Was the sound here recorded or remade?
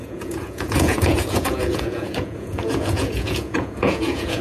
remade